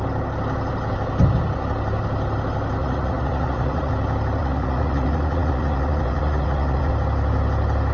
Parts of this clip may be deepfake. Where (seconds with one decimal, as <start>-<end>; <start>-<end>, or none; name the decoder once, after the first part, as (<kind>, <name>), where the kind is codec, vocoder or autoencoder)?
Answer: 2.8-3.9 (vocoder, Vocos); 4.4-6.9